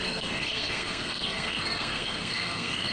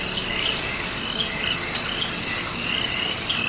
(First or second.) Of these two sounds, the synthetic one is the first